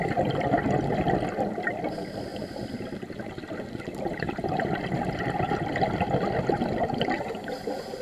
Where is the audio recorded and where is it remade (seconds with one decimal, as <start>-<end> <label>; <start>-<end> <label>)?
0.0-2.3 remade; 2.3-4.2 recorded; 4.2-8.0 remade